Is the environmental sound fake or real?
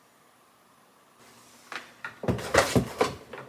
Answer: fake